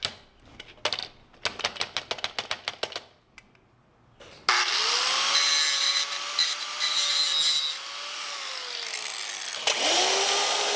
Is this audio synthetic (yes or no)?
no